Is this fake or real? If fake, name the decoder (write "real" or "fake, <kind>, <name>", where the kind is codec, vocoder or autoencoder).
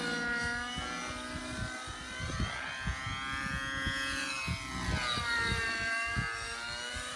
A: real